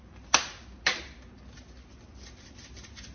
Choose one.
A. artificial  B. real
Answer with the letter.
B